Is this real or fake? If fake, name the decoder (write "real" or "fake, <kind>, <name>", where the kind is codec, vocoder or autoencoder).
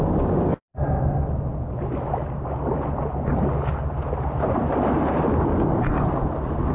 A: real